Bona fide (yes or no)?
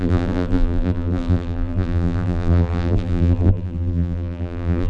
no